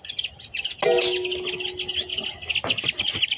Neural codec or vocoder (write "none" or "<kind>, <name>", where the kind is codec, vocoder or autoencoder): none